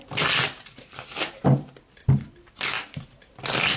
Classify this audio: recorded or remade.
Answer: remade